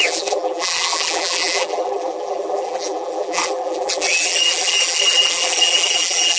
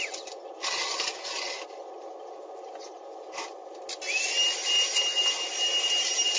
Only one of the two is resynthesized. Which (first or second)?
first